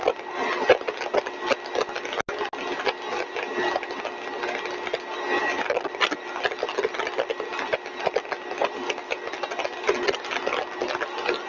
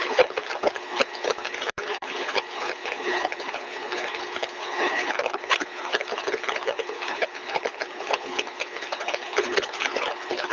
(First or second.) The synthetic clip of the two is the second